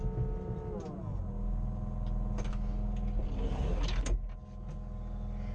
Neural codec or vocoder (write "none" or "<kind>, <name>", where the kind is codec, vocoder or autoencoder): none